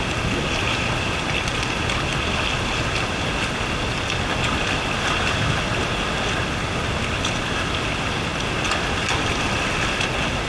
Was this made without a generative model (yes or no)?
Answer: yes